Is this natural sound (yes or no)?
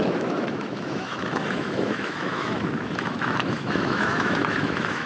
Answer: no